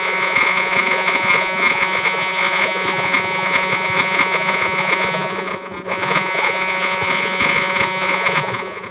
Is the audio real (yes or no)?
no